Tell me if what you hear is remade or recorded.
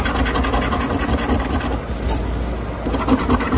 recorded